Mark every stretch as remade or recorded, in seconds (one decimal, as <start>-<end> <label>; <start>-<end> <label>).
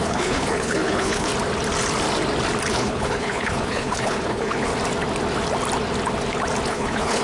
0.0-1.3 remade; 1.3-2.7 recorded; 2.7-4.7 remade; 4.7-6.7 recorded; 6.7-7.2 remade